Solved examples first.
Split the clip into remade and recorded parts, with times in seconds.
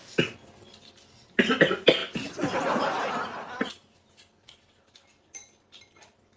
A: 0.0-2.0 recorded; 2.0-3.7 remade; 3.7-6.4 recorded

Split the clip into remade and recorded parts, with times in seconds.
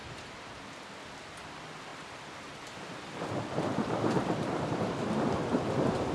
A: 0.0-0.6 remade; 0.6-1.9 recorded; 1.9-4.9 remade; 4.9-6.1 recorded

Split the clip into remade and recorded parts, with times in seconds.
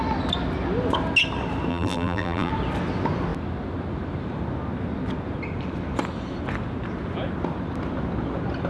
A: 0.0-1.7 recorded; 1.7-2.5 remade; 2.5-8.7 recorded